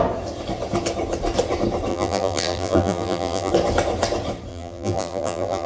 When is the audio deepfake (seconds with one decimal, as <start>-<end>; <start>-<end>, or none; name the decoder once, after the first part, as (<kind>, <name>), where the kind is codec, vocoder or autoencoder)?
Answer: 1.9-3.5 (vocoder, BigVGAN v2); 4.5-5.7